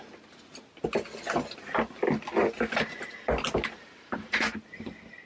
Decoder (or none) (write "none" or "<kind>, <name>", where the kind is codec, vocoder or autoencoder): none